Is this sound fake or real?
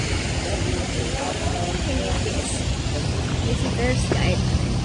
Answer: real